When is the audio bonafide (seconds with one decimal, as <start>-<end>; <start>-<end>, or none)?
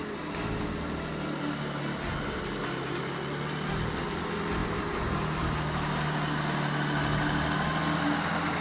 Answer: 0.0-4.6; 5.5-8.6